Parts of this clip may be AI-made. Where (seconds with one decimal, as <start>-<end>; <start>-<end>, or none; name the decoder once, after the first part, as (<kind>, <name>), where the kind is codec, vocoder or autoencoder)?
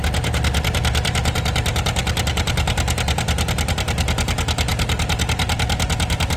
none